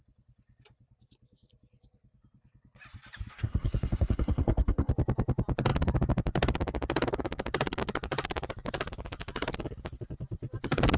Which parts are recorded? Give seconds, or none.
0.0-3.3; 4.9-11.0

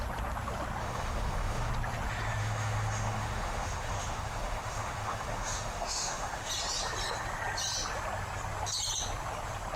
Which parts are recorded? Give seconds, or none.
0.0-0.8; 1.7-2.4; 6.5-9.8

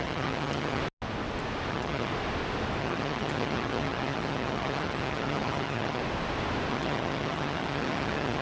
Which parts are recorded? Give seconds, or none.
0.8-1.7; 2.1-2.8; 6.0-6.7

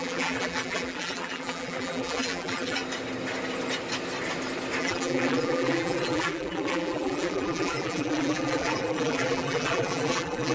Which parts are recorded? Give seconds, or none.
2.8-4.8

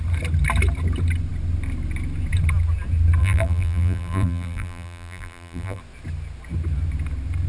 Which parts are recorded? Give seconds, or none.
0.0-3.2; 5.8-7.5